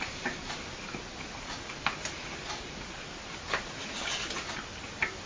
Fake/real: real